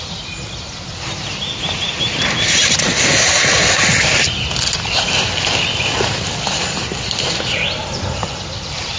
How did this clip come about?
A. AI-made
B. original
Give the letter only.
B